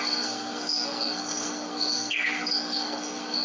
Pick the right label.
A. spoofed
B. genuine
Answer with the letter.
A